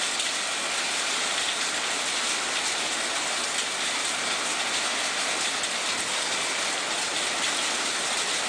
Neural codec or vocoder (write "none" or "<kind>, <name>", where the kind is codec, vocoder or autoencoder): none